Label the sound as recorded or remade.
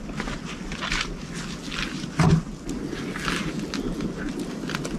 recorded